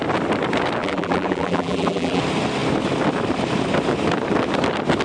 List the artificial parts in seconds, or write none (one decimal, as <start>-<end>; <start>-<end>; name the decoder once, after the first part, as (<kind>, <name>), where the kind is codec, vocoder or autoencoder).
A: 0.8-2.2 (vocoder, BigVGAN v2)